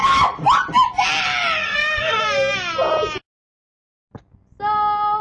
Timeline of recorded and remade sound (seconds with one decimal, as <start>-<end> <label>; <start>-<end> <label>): 0.0-1.6 recorded; 1.6-2.2 remade; 2.2-5.2 recorded